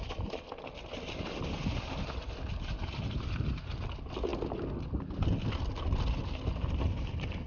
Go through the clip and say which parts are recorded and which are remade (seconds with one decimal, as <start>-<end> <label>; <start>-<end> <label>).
0.0-7.5 recorded